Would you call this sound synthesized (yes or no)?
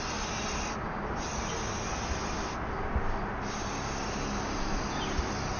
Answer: no